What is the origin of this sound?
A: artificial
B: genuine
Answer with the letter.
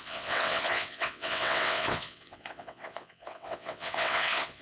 A